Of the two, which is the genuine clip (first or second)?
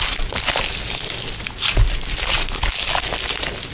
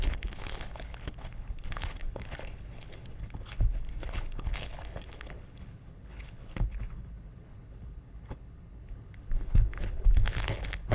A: first